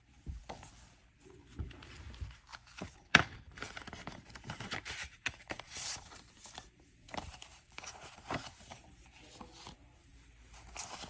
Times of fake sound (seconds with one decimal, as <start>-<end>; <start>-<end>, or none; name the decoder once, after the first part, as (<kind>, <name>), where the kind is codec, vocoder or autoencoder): 0.0-1.0 (vocoder, BigVGAN v2); 1.6-9.0; 9.7-10.1